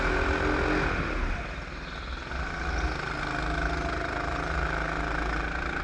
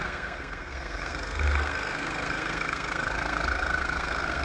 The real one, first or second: first